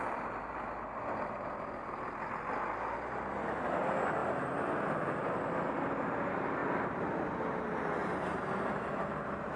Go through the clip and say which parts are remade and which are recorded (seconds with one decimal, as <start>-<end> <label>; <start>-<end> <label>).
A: 0.0-6.6 recorded; 6.6-7.2 remade; 7.2-9.6 recorded